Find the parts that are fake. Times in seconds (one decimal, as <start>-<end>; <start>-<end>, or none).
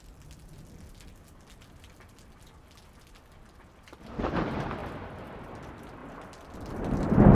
0.0-4.8; 5.5-7.3